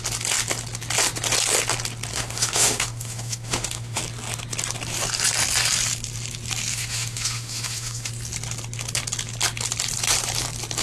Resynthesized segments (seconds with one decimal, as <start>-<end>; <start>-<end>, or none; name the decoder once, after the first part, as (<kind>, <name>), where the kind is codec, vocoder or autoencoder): 2.1-4.0 (autoencoder, DAC-VAE); 6.7-8.1